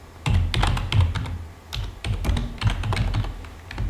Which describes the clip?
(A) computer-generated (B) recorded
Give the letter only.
B